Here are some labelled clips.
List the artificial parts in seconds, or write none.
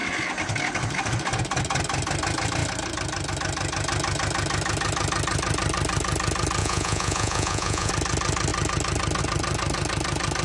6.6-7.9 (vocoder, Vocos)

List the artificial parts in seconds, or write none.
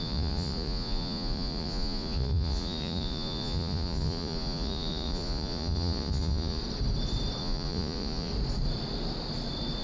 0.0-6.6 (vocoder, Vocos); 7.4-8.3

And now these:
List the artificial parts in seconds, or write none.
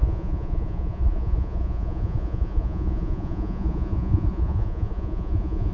0.0-5.7 (vocoder, Vocos)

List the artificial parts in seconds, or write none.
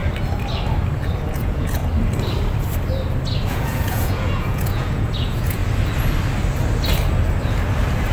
1.3-1.8 (vocoder, Vocos); 3.5-5.6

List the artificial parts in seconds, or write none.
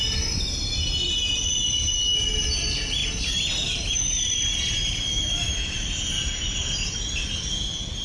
none